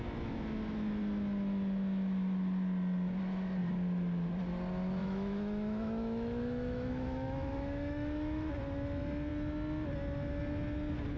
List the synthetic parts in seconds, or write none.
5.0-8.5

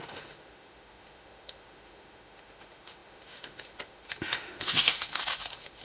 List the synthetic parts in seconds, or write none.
0.0-5.8

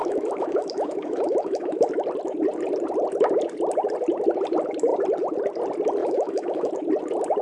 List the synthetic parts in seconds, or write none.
0.0-1.9; 6.0-6.7

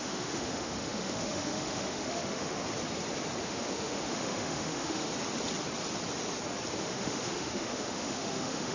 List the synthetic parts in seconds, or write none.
0.0-2.6; 3.4-5.1; 6.8-8.7